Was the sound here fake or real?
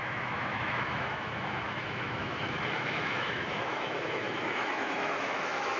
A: fake